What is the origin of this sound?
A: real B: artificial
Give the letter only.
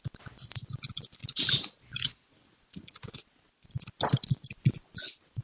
A